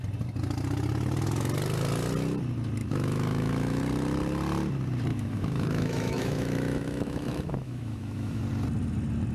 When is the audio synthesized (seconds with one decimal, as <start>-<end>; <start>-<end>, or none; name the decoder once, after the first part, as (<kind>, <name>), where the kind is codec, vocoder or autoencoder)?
2.8-3.8 (autoencoder, DAC-VAE); 5.1-8.4